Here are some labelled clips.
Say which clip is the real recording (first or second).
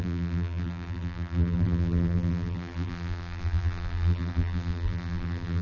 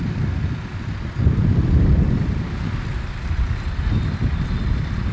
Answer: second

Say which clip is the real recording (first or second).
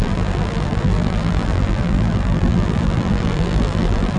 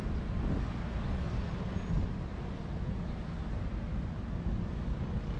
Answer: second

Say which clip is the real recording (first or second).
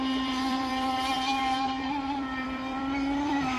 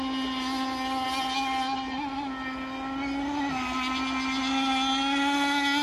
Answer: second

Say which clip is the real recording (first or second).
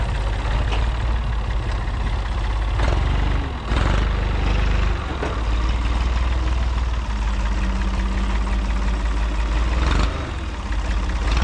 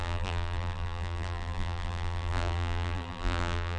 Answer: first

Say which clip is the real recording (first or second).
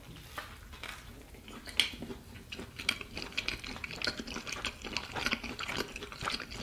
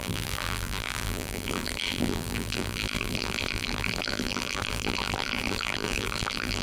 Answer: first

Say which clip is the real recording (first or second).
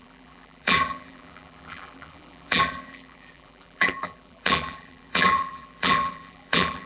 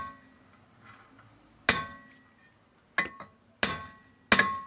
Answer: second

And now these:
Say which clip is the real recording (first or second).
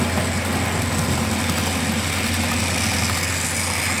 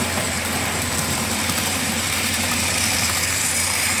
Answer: first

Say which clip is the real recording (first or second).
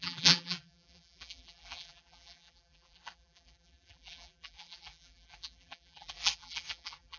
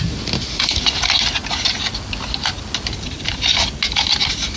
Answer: second